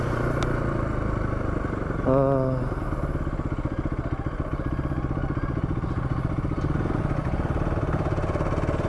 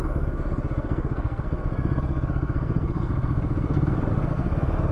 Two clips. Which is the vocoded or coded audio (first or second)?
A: second